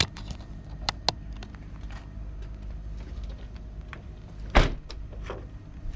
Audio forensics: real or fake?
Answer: real